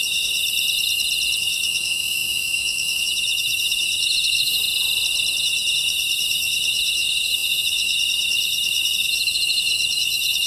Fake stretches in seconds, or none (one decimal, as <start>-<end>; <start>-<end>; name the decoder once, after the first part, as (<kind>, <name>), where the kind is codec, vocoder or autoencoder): 0.0-0.4 (autoencoder, DAC-VAE); 1.4-4.6; 5.4-10.5